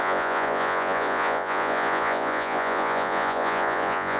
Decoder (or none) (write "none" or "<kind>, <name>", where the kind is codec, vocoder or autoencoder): vocoder, Vocos